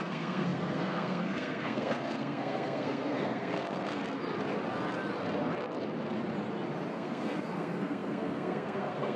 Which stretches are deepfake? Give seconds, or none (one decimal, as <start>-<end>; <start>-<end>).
0.0-4.0; 6.9-9.2